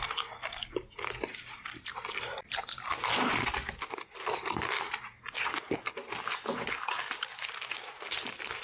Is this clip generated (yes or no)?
no